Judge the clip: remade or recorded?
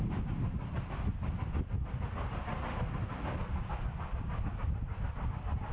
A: recorded